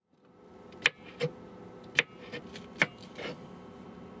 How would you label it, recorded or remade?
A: recorded